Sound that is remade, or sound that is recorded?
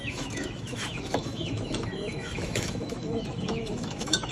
remade